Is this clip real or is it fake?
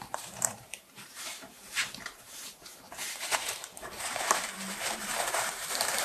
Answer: fake